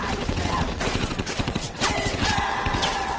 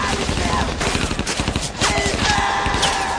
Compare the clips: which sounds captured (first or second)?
second